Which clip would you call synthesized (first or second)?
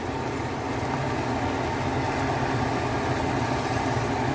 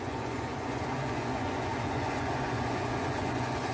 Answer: second